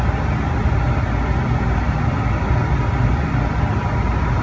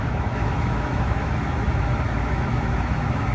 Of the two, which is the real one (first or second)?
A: first